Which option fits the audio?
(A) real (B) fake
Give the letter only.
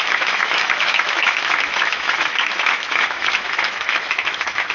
B